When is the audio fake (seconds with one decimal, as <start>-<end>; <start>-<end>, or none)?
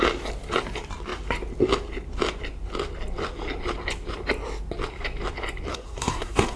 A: 5.7-6.6